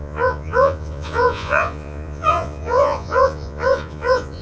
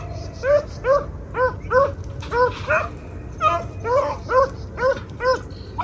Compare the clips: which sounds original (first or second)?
second